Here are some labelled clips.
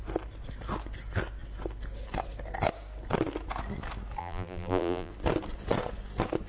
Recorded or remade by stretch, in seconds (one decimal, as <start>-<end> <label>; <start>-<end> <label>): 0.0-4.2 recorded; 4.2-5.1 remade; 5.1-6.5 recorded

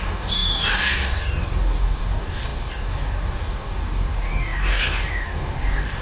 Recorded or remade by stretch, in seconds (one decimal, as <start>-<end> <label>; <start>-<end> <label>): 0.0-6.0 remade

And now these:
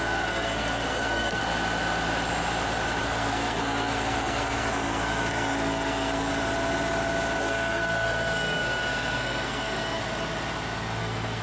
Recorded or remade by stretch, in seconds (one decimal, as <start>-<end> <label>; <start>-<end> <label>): 0.0-1.4 remade; 1.4-3.0 recorded; 3.0-6.3 remade; 6.3-7.4 recorded; 7.4-10.0 remade; 10.0-11.0 recorded; 11.0-11.4 remade

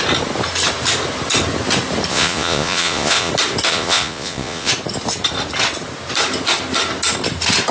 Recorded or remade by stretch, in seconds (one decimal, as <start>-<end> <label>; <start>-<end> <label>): 0.0-2.1 recorded; 2.1-3.3 remade; 3.3-3.7 recorded; 3.7-4.7 remade; 4.7-7.7 recorded

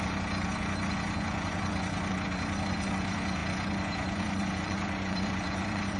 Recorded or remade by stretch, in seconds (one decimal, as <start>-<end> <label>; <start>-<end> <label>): 0.0-6.0 remade

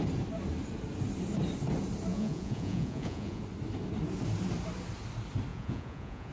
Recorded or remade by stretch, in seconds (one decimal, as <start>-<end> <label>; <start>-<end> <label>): 0.0-2.1 recorded; 2.1-3.4 remade; 3.4-5.5 recorded; 5.5-6.3 remade

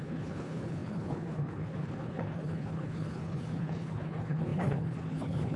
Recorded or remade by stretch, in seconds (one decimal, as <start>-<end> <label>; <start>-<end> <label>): 0.0-5.6 remade